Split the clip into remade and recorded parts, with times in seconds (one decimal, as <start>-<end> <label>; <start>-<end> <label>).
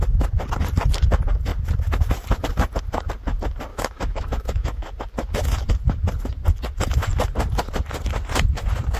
0.0-3.7 recorded; 3.7-4.9 remade; 4.9-9.0 recorded